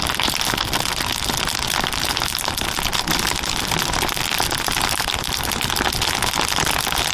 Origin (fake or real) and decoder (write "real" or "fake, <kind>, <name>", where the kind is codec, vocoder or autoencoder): real